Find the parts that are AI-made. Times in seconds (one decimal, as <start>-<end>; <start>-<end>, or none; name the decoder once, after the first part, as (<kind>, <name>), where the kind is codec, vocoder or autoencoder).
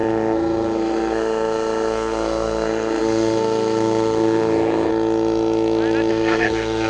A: 0.0-4.9 (codec, SNAC); 6.1-6.9